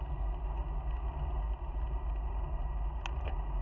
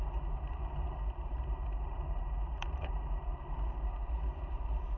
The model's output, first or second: second